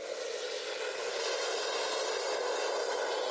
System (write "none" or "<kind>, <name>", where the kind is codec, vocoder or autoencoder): none